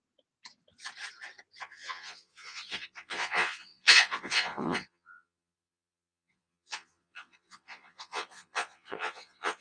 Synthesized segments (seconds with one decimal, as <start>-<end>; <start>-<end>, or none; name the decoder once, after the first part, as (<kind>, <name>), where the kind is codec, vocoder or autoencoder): 1.6-9.6 (vocoder, Vocos)